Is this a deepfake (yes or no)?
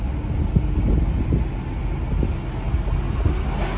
no